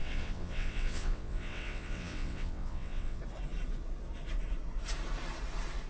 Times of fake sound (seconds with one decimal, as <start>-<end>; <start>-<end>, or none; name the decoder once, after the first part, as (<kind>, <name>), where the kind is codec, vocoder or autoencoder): 0.0-3.2 (vocoder, WaveNeXt)